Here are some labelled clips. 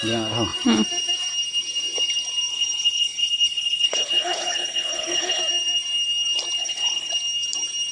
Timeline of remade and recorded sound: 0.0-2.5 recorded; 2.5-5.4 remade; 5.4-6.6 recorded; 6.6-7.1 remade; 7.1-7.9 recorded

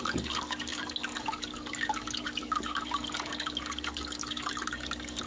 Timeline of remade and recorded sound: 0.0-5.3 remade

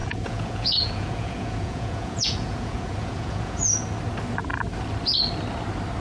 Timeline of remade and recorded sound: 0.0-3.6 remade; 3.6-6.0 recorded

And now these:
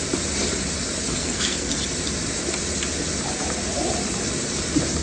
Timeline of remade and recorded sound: 0.0-1.0 recorded; 1.0-1.8 remade; 1.8-5.0 recorded